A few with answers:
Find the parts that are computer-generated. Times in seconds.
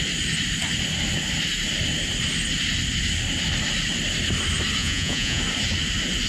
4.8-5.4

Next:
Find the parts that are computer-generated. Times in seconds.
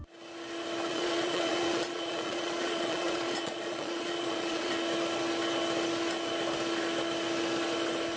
0.9-4.7